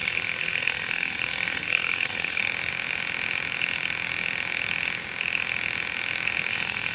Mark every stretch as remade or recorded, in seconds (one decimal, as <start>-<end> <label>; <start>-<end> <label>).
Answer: 0.0-2.4 remade; 2.4-6.5 recorded; 6.5-6.9 remade